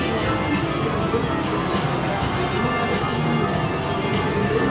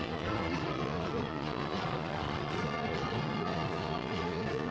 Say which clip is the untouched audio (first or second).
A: first